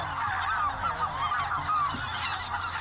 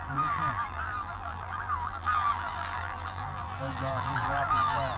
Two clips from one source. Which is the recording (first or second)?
first